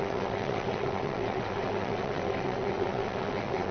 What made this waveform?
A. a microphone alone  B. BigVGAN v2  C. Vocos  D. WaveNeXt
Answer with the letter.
D